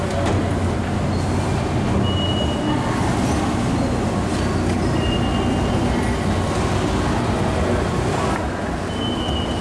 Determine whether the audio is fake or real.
real